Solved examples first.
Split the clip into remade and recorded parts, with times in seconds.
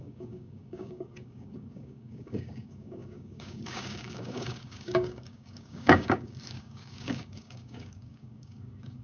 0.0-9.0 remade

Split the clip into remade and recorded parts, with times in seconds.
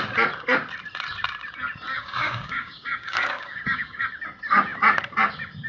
0.0-1.9 recorded; 1.9-4.0 remade; 4.0-5.7 recorded